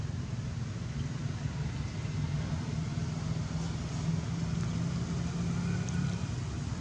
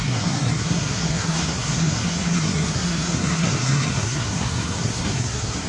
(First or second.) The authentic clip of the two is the first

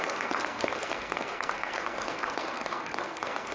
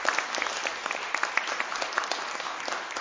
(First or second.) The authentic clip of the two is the second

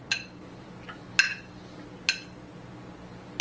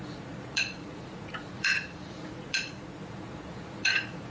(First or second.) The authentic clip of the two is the first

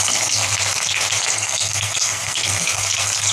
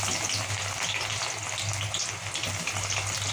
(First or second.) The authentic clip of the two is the second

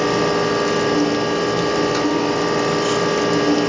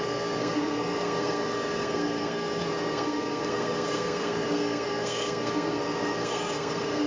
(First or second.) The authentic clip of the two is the first